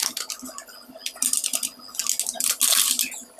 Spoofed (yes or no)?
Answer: no